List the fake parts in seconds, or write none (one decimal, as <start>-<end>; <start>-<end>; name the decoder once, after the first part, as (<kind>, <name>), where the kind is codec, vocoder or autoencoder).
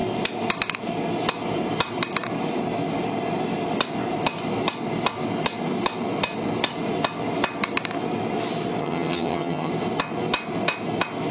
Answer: 8.8-9.7 (vocoder, HiFi-GAN)